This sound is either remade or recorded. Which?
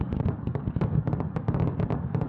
remade